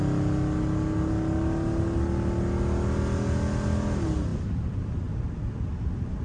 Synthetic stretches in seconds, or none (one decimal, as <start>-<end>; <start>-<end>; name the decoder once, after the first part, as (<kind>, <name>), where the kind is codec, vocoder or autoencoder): none